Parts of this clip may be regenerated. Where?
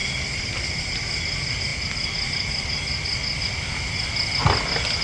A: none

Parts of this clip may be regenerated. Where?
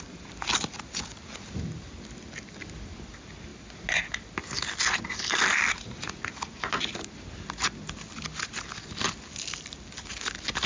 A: none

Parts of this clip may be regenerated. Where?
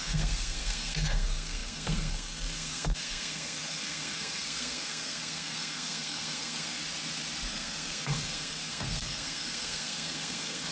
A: 0.0-6.8 (codec, SNAC); 7.5-10.7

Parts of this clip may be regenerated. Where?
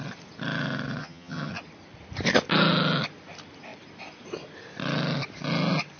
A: 1.0-1.5 (vocoder, HiFi-GAN)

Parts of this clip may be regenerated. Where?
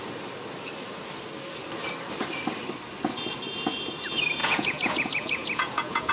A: 4.4-6.1 (vocoder, Vocos)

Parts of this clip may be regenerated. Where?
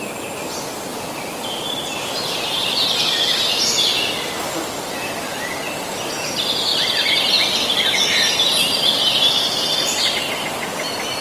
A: 0.9-5.6 (vocoder, BigVGAN v2); 6.7-10.0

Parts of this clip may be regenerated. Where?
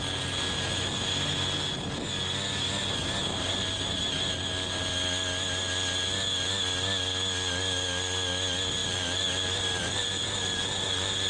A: 3.3-4.0 (vocoder, BigVGAN v2); 8.8-11.3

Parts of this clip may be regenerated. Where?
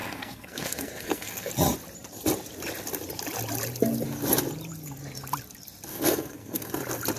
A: 0.0-1.5 (codec, SNAC); 5.9-6.7